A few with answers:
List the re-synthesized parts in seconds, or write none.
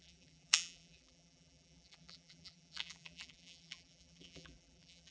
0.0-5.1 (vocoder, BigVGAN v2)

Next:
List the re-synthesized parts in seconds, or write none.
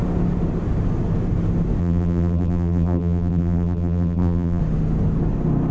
1.8-4.6 (vocoder, BigVGAN v2)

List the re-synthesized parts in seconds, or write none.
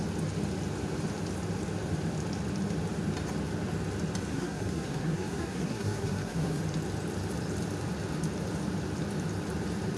4.3-6.6 (codec, SNAC)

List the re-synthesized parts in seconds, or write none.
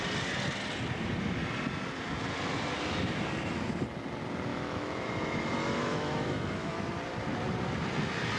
4.5-5.1 (autoencoder, DAC-VAE); 5.8-6.9